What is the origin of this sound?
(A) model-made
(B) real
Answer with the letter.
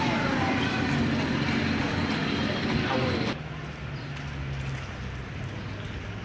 B